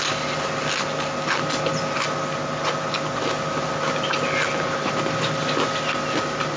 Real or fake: real